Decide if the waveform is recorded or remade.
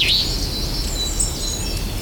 recorded